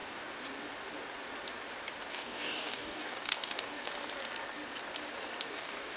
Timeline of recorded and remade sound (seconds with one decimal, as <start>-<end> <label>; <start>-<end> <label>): 0.0-2.1 recorded; 2.1-3.9 remade; 3.9-5.5 recorded; 5.5-6.0 remade